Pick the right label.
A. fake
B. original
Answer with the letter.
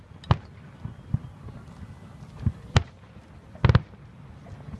B